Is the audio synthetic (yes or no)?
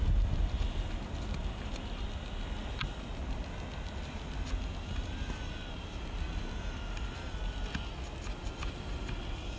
no